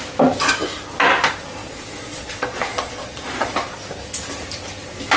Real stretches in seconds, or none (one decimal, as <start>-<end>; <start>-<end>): 0.0-1.6; 3.5-5.2